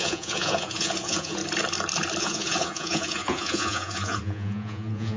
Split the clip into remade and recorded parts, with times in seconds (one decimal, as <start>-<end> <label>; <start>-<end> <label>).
0.0-1.4 remade; 1.4-2.2 recorded; 2.2-5.2 remade